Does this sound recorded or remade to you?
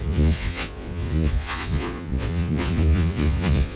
remade